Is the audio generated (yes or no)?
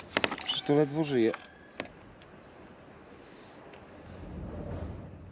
no